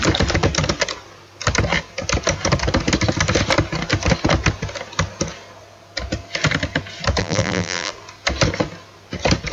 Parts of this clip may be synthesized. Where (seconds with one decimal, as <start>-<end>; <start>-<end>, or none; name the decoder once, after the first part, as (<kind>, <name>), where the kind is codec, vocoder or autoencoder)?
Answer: 7.2-7.9 (vocoder, BigVGAN v2)

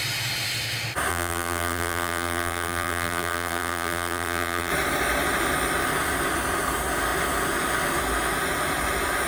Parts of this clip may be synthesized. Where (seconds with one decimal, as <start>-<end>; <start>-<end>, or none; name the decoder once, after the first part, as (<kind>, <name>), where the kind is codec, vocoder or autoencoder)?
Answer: 1.1-4.7 (vocoder, BigVGAN v2)

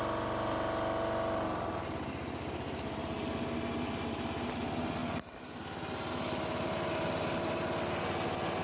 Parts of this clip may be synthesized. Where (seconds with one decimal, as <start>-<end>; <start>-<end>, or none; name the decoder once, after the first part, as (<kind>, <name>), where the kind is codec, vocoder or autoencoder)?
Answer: none